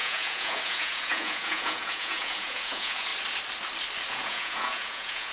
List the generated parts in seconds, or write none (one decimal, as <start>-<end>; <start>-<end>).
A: 0.0-3.1; 4.1-5.3